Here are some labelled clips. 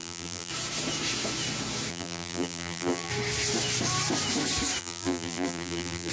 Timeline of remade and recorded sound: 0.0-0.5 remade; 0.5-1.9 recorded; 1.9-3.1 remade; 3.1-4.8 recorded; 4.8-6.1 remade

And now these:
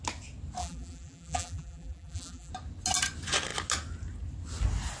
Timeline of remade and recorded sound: 0.0-0.6 recorded; 0.6-2.5 remade; 2.5-5.0 recorded

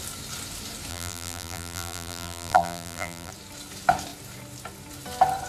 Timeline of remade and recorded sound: 0.0-0.9 recorded; 0.9-3.3 remade; 3.3-5.5 recorded

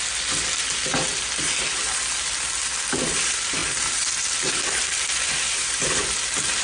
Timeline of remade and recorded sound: 0.0-0.6 remade; 0.6-2.2 recorded; 2.2-3.6 remade; 3.6-4.8 recorded; 4.8-6.6 remade

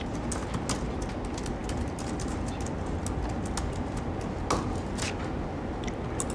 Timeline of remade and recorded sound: 0.0-6.3 recorded

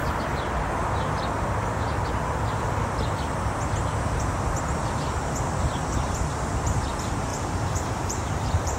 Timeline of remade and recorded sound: 0.0-7.3 recorded; 7.3-8.8 remade